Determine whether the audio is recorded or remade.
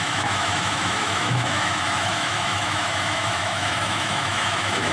remade